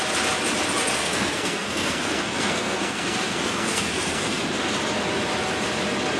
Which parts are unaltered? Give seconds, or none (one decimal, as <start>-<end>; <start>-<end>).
0.0-1.0; 4.4-6.2